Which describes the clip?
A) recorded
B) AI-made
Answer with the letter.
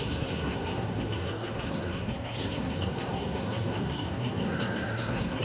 B